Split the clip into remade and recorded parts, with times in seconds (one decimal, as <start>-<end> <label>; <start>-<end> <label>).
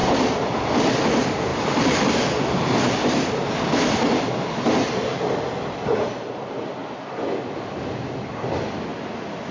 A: 0.0-9.5 recorded